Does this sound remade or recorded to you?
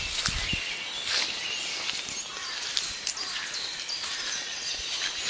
recorded